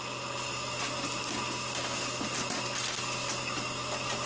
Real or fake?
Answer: real